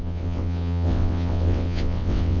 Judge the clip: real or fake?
fake